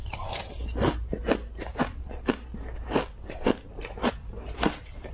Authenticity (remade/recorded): recorded